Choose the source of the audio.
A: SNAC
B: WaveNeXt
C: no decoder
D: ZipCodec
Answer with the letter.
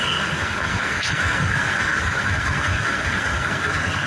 A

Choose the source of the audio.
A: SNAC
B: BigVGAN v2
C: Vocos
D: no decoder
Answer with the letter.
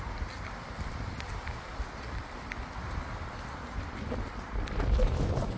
D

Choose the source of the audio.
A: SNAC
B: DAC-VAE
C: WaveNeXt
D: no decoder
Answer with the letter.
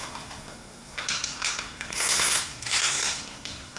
A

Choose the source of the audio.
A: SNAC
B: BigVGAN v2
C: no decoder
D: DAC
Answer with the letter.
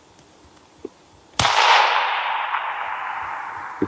C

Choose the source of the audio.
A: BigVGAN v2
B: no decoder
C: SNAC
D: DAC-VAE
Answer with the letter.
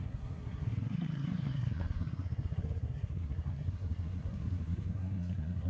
C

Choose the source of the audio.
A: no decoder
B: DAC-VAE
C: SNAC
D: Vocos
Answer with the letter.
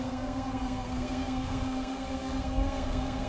C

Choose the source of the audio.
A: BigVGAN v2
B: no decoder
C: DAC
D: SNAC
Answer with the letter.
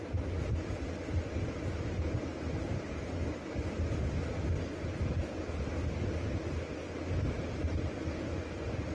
B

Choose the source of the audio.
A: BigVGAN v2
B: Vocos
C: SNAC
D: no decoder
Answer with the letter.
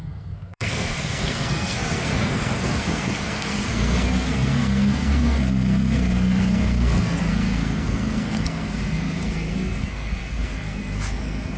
C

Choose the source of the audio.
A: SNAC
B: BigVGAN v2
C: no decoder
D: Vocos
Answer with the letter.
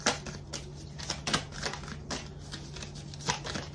C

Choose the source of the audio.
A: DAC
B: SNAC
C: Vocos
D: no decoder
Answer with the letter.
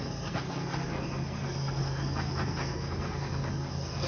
B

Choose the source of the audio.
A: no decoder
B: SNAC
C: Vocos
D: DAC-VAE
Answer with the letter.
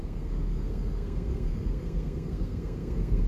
B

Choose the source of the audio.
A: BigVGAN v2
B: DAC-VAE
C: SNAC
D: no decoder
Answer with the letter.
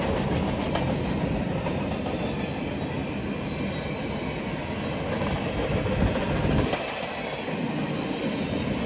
D